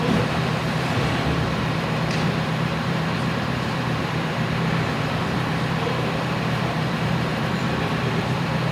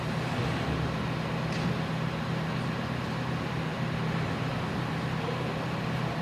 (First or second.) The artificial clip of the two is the first